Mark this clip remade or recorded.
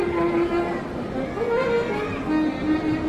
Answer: recorded